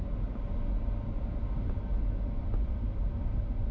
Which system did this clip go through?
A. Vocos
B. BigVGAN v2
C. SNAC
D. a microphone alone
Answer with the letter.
D